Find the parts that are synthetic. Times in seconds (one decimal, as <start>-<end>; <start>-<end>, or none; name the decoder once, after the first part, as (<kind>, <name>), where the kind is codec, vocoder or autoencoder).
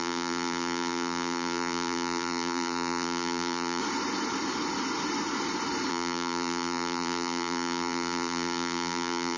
0.0-3.8 (vocoder, BigVGAN v2); 5.9-9.4